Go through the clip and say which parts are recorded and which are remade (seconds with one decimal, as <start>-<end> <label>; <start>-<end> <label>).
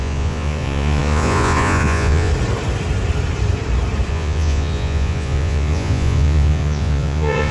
0.0-2.3 remade; 2.3-4.1 recorded; 4.1-7.5 remade